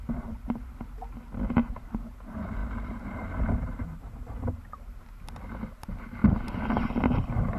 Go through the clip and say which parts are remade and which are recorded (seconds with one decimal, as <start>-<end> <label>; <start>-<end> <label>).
0.0-2.6 recorded; 2.6-5.0 remade; 5.0-7.6 recorded